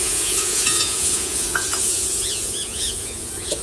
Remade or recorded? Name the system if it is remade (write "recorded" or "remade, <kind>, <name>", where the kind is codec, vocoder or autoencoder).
remade, vocoder, Vocos